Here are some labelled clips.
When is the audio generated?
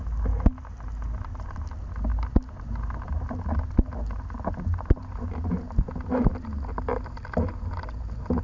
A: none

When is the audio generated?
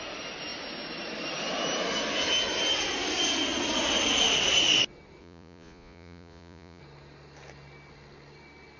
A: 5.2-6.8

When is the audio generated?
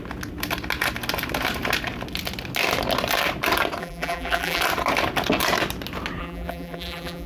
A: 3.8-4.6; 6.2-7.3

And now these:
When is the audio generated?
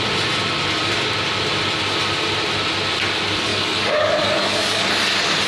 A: 3.5-4.9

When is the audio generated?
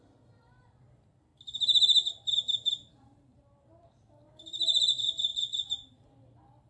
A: 0.0-1.3; 2.1-5.3